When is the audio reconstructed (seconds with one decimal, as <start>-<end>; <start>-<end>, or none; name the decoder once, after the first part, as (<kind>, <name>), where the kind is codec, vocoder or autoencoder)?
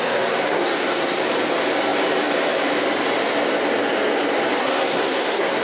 0.4-1.2 (codec, SNAC); 4.6-5.6